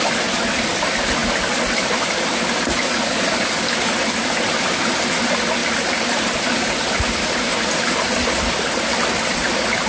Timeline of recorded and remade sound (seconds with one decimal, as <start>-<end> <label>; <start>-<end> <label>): 0.0-9.9 recorded